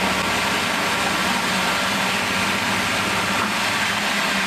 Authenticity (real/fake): real